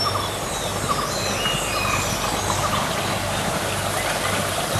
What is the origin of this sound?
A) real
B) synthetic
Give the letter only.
A